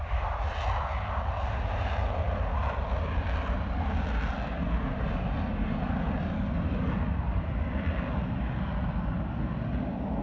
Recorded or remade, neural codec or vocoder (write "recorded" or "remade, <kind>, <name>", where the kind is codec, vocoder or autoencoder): recorded